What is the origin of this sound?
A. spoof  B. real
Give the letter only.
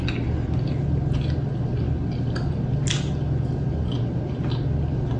B